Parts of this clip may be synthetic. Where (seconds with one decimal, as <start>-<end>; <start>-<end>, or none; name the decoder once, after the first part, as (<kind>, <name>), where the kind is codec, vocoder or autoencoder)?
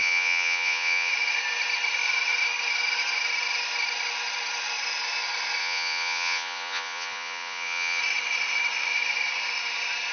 0.0-1.1 (vocoder, Vocos); 5.6-8.0